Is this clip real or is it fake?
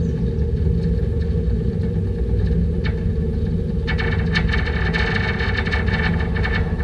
real